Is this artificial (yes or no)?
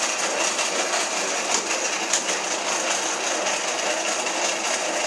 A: no